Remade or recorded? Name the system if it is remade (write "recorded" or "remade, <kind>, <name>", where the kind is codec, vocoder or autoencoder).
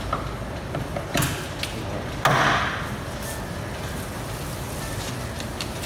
recorded